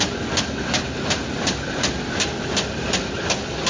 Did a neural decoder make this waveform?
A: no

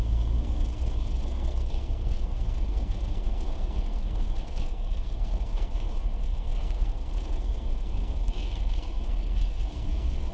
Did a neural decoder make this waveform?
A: yes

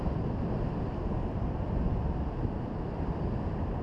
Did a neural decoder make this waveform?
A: no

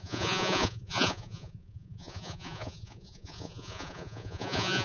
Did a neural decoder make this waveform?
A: yes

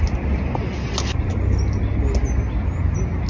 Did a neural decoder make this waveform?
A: no